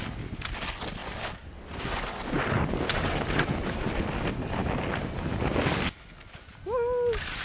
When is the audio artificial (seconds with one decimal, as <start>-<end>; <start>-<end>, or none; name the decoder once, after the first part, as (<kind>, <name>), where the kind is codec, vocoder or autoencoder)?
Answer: none